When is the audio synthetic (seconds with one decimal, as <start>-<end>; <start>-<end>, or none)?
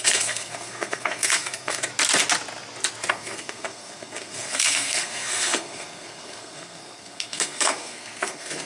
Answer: 0.0-1.9; 3.1-8.7